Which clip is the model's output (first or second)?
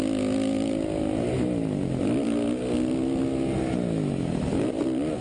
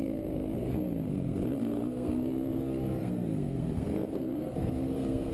second